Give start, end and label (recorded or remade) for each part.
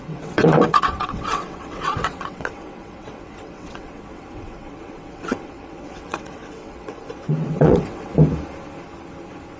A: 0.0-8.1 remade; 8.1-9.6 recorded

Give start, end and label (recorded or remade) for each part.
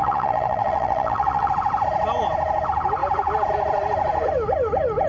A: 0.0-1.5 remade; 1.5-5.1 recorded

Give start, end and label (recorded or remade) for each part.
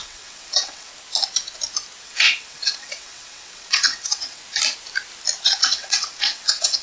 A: 0.0-0.9 remade; 0.9-2.0 recorded; 2.0-4.4 remade; 4.4-5.4 recorded; 5.4-6.8 remade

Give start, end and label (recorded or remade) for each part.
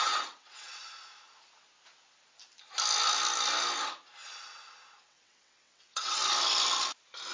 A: 0.0-0.8 remade; 0.8-5.1 recorded; 5.1-6.2 remade; 6.2-7.3 recorded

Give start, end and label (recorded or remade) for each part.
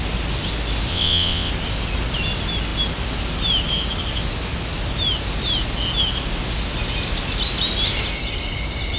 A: 0.0-0.9 recorded; 0.9-1.5 remade; 1.5-9.0 recorded